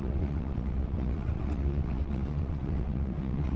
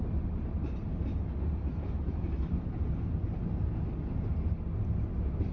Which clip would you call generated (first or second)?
first